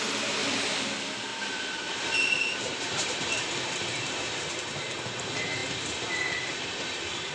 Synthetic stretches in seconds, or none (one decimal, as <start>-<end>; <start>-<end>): 0.4-0.9; 1.3-4.4